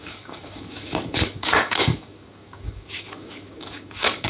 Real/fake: fake